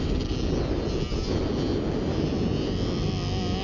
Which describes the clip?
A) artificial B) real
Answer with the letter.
B